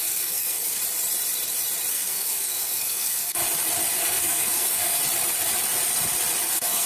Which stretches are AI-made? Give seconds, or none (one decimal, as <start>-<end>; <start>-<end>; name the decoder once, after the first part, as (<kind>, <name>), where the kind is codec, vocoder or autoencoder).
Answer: 0.0-0.8 (codec, SNAC); 1.9-3.4; 4.0-5.0; 6.5-6.9